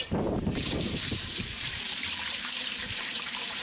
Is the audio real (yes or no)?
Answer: no